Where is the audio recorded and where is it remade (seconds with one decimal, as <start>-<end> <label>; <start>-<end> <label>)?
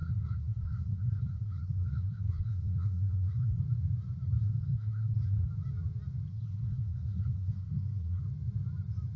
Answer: 0.0-3.6 remade; 3.6-4.4 recorded; 4.4-5.5 remade; 5.5-6.3 recorded; 6.3-8.2 remade; 8.2-9.2 recorded